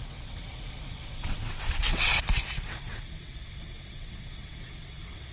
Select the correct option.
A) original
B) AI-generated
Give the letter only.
B